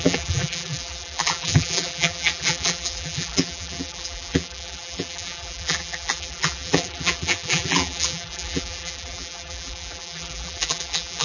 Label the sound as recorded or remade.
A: remade